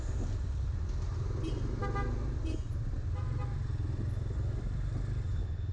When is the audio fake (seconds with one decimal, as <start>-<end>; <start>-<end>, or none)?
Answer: none